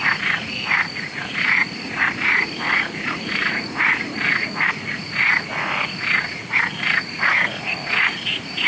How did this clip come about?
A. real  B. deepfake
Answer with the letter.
B